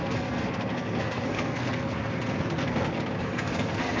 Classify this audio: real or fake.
fake